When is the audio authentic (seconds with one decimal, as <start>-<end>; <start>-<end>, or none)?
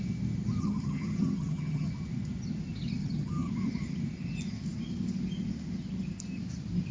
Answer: 0.0-0.6; 1.9-3.0; 3.5-6.9